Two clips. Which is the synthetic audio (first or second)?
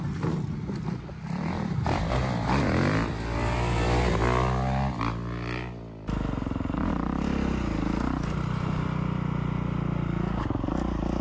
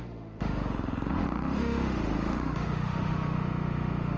second